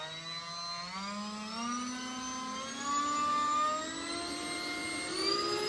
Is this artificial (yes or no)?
no